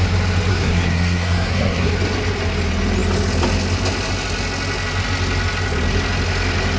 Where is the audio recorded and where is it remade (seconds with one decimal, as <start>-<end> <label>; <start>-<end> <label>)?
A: 0.0-0.5 recorded; 0.5-1.9 remade; 1.9-6.8 recorded